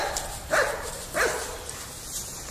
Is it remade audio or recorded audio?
recorded